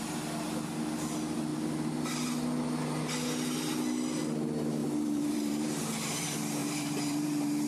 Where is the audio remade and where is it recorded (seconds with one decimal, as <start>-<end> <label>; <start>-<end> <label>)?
0.0-4.8 recorded; 4.8-5.8 remade; 5.8-6.6 recorded; 6.6-7.7 remade